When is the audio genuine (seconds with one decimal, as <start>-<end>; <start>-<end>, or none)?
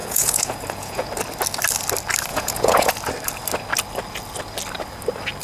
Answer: 1.1-2.3; 2.9-5.4